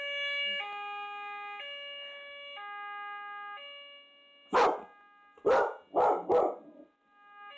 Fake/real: real